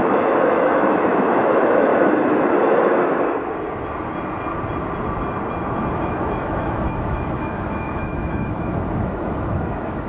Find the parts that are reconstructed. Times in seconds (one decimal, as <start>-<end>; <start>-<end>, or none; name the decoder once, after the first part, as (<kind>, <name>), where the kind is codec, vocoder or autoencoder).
0.0-1.9 (autoencoder, DAC-VAE); 5.9-10.1